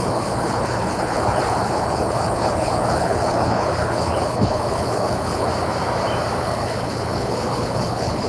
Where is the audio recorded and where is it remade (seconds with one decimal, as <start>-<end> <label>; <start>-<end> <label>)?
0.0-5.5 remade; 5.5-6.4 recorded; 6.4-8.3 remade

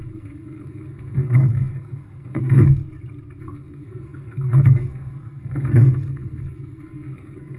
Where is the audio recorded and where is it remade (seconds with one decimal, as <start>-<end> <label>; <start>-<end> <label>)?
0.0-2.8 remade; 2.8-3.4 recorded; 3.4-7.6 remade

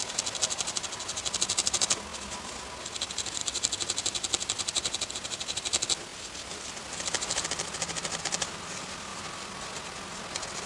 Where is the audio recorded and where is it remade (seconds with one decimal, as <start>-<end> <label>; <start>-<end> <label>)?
0.0-10.7 recorded